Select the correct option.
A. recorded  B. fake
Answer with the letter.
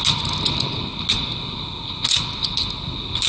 A